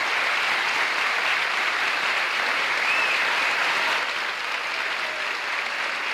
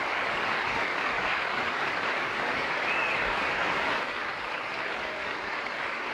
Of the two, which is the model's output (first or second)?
second